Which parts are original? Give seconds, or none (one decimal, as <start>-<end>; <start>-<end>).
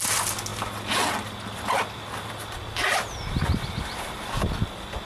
0.0-5.1